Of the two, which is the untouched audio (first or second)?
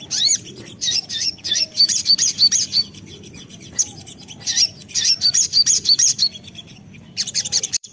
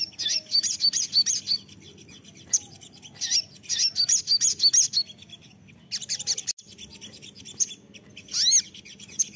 second